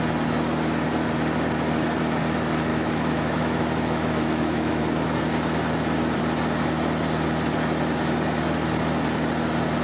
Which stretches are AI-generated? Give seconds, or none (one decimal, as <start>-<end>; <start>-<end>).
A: 2.7-4.8